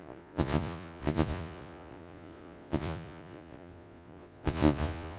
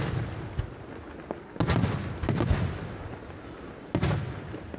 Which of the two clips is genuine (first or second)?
second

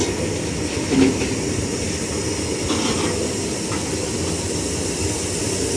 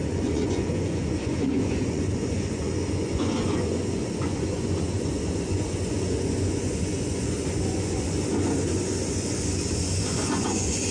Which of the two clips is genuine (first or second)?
first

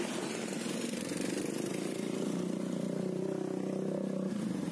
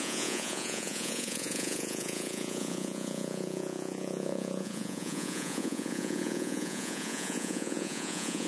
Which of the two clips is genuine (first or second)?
first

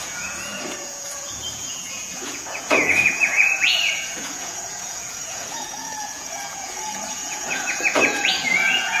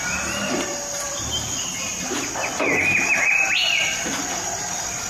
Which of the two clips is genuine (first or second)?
second